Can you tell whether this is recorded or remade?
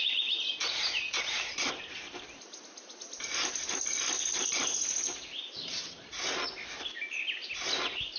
recorded